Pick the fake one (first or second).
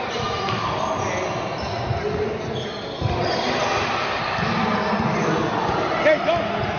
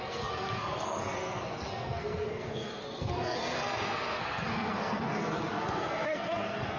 second